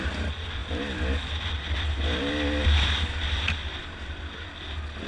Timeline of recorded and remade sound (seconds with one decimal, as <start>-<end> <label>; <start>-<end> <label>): 0.0-5.1 recorded

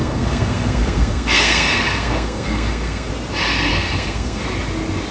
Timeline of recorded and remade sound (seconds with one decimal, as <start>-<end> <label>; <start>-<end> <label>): 0.0-3.1 remade; 3.1-3.7 recorded; 3.7-4.4 remade; 4.4-5.1 recorded

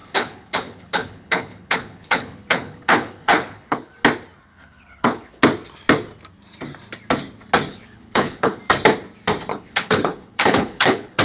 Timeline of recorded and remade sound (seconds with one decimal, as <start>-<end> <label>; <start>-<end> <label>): 0.0-3.9 remade; 3.9-4.5 recorded; 4.5-5.4 remade; 5.4-7.7 recorded; 7.7-8.6 remade; 8.6-9.5 recorded; 9.5-11.2 remade

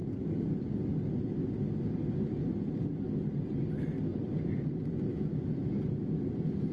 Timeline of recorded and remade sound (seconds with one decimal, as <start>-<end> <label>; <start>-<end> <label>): 0.0-5.1 recorded; 5.1-5.7 remade; 5.7-6.7 recorded

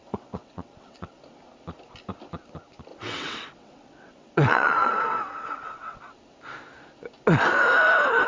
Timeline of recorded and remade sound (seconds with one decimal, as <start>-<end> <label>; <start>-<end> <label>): 0.0-1.2 remade; 1.2-2.9 recorded; 2.9-6.0 remade; 6.0-8.3 recorded

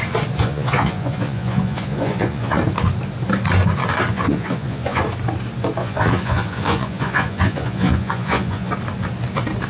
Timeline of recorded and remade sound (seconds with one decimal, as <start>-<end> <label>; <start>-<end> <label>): 0.0-0.4 recorded; 0.4-2.6 remade; 2.6-4.1 recorded; 4.1-5.0 remade; 5.0-5.8 recorded; 5.8-8.7 remade; 8.7-9.7 recorded